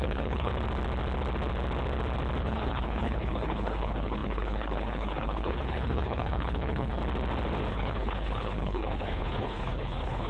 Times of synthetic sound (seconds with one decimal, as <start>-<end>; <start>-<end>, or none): 0.0-0.5; 2.4-7.0; 7.7-10.3